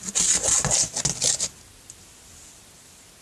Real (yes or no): yes